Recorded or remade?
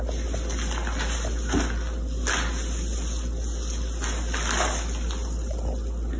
recorded